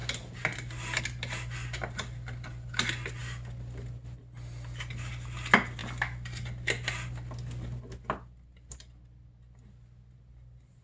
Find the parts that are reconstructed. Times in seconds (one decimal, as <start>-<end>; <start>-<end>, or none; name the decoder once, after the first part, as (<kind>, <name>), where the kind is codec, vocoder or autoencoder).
none